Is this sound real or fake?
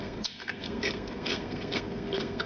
fake